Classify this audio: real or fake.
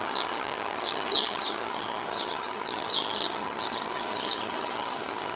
fake